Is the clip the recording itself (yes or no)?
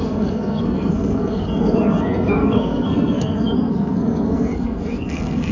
no